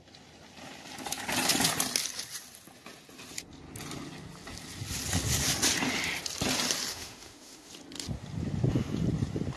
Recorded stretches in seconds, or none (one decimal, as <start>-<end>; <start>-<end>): 0.0-6.9; 7.7-9.6